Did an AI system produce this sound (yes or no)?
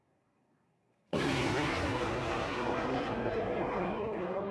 yes